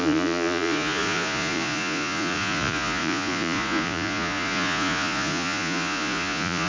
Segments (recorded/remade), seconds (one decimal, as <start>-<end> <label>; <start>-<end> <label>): 0.0-6.7 remade